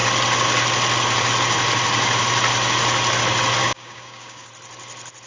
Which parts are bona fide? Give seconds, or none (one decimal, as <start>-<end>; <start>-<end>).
0.0-3.6; 4.5-5.3